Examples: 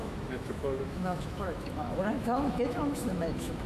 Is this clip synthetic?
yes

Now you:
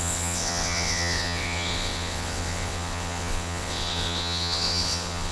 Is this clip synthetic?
yes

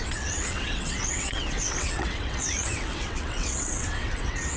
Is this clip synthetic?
yes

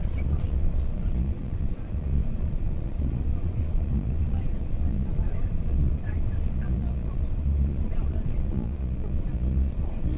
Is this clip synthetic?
yes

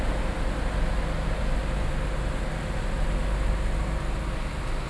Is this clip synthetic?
no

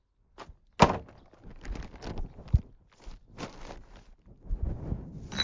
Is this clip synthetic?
no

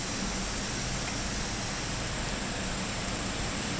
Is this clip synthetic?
no